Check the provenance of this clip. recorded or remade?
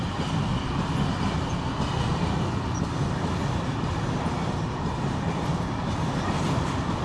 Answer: recorded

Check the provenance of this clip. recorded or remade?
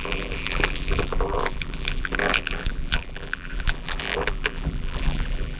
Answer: remade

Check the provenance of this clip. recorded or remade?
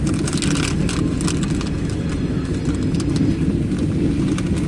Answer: recorded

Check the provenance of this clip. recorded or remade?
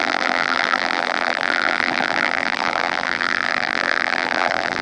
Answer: remade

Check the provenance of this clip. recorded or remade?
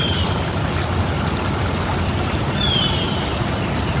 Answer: recorded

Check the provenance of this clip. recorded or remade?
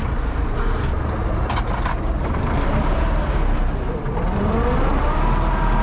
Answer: remade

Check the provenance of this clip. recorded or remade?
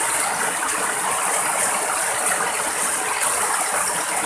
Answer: recorded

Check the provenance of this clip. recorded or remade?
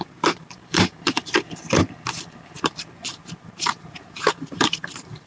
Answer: remade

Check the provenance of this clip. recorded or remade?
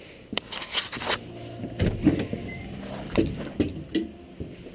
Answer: recorded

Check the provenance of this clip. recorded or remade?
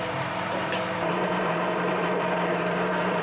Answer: remade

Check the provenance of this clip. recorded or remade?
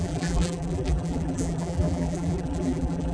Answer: remade